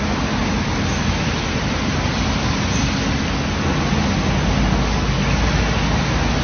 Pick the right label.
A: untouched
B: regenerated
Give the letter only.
A